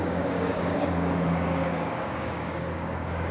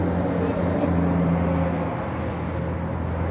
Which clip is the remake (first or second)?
first